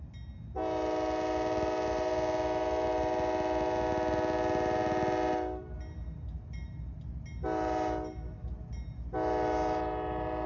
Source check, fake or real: real